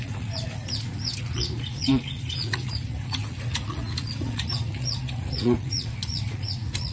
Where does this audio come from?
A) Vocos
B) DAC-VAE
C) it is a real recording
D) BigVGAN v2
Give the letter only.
A